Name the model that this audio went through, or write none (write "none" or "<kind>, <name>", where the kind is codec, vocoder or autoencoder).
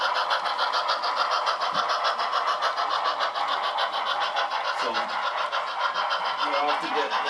none